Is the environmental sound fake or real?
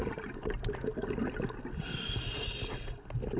real